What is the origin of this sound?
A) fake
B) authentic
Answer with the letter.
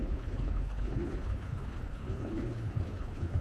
A